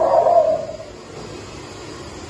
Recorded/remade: recorded